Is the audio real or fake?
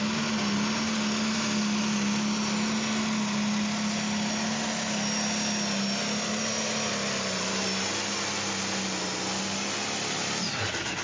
real